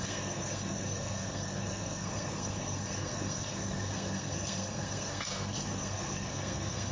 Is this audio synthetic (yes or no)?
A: yes